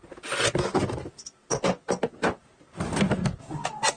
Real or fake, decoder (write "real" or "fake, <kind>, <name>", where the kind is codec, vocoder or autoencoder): real